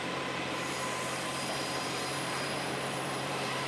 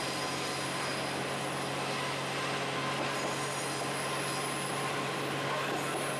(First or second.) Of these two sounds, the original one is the second